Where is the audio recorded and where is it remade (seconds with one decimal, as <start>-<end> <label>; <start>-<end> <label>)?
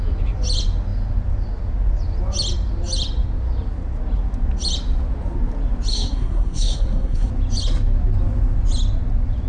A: 0.0-5.9 recorded; 5.9-7.3 remade; 7.3-9.5 recorded